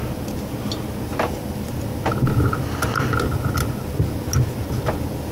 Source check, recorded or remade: recorded